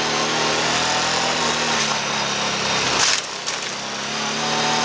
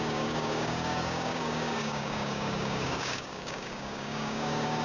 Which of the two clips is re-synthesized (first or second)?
second